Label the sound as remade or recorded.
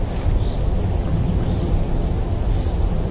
recorded